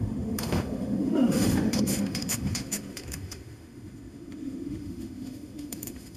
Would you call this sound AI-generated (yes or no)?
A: yes